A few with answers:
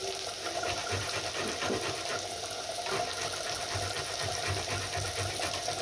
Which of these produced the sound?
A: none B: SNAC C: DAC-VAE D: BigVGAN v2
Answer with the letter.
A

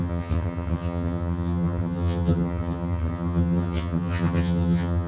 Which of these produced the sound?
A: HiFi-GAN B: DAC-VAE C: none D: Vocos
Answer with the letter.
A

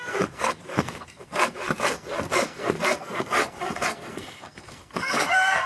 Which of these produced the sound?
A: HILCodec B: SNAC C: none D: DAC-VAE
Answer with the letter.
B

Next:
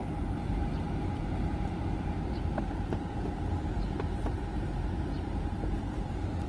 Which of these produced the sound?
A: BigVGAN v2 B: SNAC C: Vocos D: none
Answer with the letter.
A